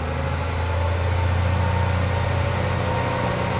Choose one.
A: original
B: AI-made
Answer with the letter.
A